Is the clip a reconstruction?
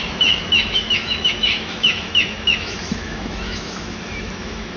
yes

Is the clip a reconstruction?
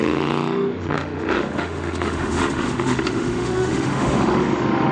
yes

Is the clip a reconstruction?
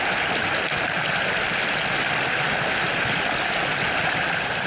no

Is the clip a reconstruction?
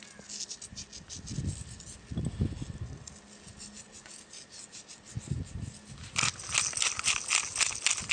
no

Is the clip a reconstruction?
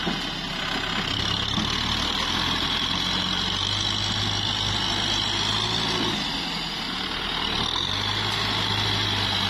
no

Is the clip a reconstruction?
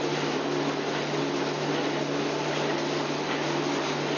no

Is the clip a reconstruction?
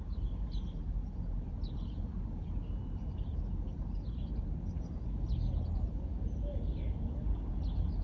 no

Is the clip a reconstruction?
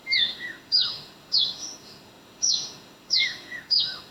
yes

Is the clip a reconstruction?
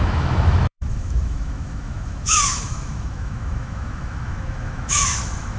yes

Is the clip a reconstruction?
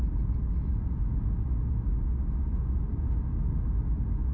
no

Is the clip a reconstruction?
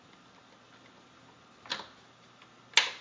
no